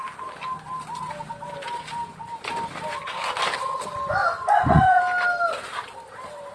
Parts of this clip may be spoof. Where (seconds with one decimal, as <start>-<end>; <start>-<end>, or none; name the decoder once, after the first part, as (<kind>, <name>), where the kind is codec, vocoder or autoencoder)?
4.2-5.0 (vocoder, Vocos)